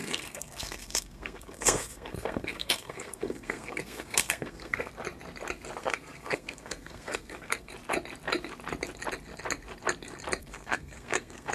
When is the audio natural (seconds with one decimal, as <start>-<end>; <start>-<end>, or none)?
4.9-5.8; 7.7-10.4